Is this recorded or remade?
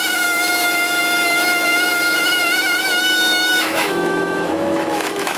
remade